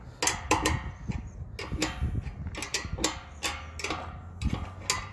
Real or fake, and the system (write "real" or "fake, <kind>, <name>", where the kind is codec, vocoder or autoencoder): real